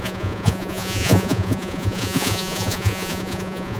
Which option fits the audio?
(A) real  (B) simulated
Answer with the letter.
B